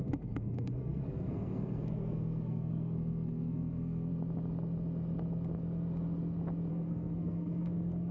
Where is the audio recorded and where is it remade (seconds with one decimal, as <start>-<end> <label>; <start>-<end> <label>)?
0.0-4.1 remade; 4.1-6.7 recorded; 6.7-8.1 remade